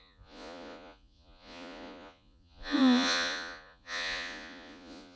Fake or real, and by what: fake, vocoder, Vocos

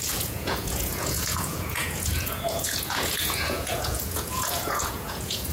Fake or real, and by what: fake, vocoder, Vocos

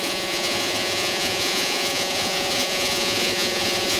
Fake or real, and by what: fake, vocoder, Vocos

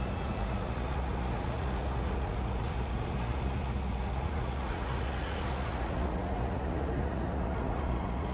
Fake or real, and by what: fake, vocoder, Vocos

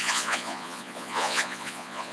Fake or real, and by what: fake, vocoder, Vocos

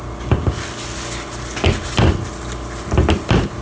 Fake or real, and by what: real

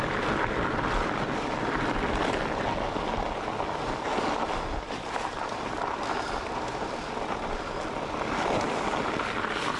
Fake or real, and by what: real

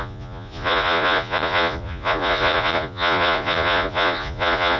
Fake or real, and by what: fake, vocoder, Vocos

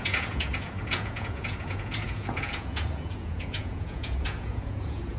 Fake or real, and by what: fake, vocoder, Vocos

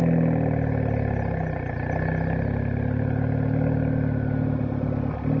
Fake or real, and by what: real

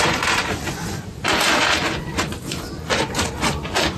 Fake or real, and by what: fake, vocoder, Vocos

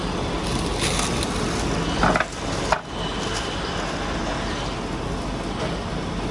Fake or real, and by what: real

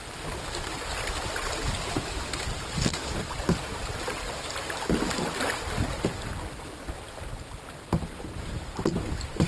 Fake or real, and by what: real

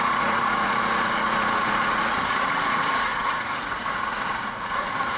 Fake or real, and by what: fake, vocoder, Vocos